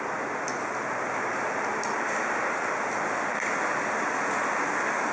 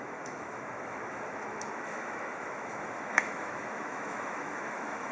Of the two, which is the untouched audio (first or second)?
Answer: first